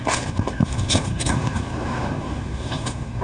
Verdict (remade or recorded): remade